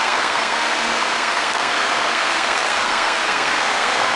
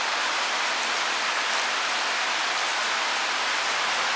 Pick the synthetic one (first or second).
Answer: first